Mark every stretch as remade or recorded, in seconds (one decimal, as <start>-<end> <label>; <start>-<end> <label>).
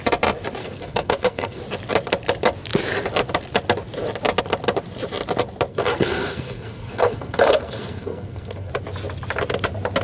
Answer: 0.0-0.6 recorded; 0.6-1.6 remade; 1.6-5.7 recorded; 5.7-8.7 remade; 8.7-10.0 recorded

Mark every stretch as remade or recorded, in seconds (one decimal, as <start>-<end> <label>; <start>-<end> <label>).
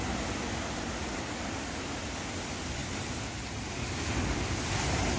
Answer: 0.0-5.2 recorded